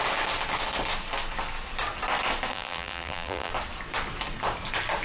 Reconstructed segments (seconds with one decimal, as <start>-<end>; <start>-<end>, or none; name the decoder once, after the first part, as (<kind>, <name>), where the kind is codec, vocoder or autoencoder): 2.5-3.5 (vocoder, BigVGAN v2)